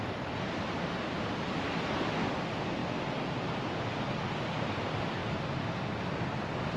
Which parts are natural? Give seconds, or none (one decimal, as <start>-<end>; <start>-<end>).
0.0-6.8